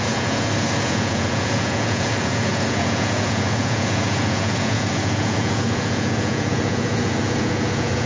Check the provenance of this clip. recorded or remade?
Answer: remade